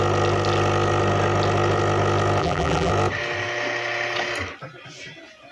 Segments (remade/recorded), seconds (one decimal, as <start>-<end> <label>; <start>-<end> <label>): 0.0-2.4 recorded; 2.4-2.9 remade; 2.9-5.5 recorded